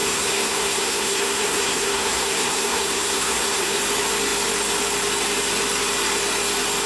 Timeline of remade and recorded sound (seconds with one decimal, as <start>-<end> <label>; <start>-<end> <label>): 0.0-3.8 remade; 3.8-6.9 recorded